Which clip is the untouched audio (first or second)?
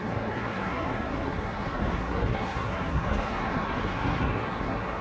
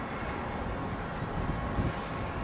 second